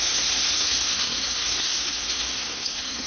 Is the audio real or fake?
fake